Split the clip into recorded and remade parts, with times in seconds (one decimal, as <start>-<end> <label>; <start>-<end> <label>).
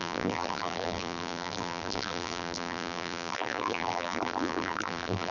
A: 0.0-5.3 remade